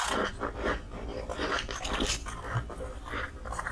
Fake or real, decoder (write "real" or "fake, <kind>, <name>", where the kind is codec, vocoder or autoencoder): real